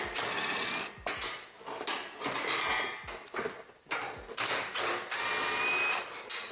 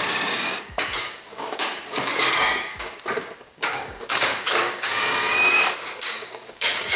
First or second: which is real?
first